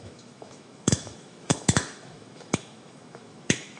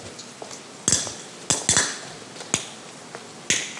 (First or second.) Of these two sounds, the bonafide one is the second